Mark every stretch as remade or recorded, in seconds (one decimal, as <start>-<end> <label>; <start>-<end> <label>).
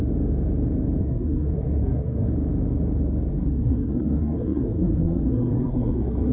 0.0-1.0 recorded; 1.0-2.3 remade; 2.3-3.3 recorded; 3.3-6.3 remade